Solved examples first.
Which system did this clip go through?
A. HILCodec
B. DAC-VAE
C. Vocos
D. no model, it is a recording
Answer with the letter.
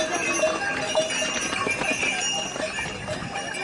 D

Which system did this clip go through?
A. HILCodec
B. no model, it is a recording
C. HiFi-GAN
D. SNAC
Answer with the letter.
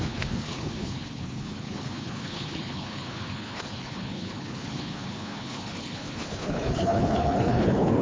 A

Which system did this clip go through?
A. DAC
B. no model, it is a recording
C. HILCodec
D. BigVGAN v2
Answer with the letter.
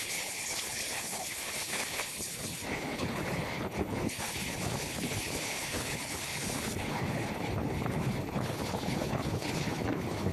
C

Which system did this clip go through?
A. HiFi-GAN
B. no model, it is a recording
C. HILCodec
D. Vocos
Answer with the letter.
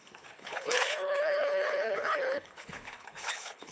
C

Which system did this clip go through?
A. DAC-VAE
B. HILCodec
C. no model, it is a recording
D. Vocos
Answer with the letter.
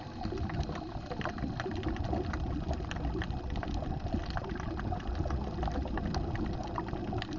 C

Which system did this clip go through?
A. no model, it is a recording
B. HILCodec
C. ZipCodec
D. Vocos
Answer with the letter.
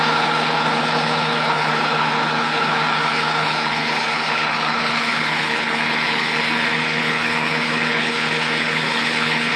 B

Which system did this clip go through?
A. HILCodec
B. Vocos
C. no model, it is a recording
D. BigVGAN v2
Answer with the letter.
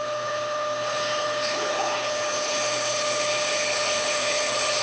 A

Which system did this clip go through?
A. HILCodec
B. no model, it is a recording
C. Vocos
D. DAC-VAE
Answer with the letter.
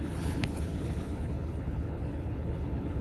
A